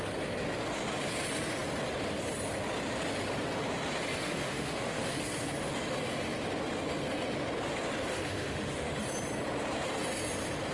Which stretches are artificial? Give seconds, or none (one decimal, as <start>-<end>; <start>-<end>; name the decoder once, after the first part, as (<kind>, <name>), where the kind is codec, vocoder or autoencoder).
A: 4.2-5.2 (autoencoder, DAC-VAE); 8.1-8.9